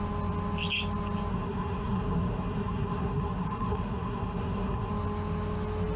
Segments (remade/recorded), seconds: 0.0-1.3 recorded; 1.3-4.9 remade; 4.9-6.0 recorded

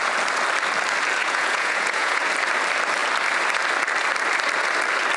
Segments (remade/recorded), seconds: 0.0-1.2 recorded; 1.2-2.2 remade; 2.2-5.2 recorded

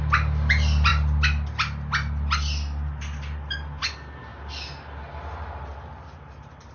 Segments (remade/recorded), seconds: 0.0-6.7 recorded

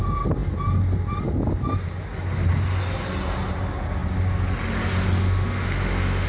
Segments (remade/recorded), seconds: 0.0-5.2 recorded; 5.2-6.3 remade

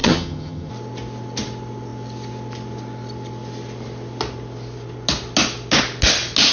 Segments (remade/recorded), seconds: 0.0-0.7 remade; 0.7-6.5 recorded

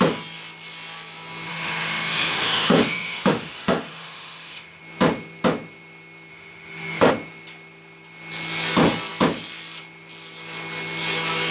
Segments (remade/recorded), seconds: 0.0-1.5 recorded; 1.5-4.8 remade; 4.8-6.3 recorded; 6.3-7.1 remade; 7.1-11.5 recorded

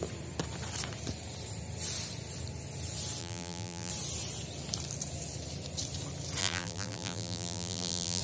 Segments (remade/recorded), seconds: 0.0-3.2 recorded; 3.2-3.9 remade; 3.9-6.4 recorded; 6.4-8.2 remade

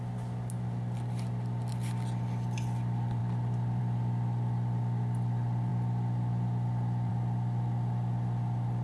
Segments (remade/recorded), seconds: 0.0-8.8 recorded